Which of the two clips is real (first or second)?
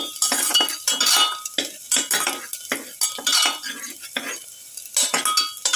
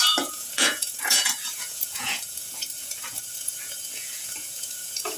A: first